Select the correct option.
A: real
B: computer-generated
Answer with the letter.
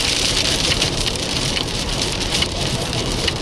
B